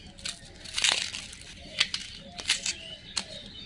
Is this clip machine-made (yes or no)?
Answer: no